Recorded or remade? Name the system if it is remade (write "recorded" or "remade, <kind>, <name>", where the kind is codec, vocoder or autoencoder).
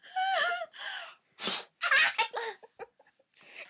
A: recorded